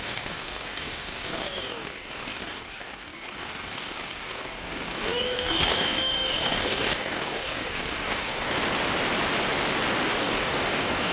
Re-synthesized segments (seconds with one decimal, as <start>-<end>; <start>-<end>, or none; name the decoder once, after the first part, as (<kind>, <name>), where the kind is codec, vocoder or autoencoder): 0.0-8.6 (codec, DAC); 10.2-11.1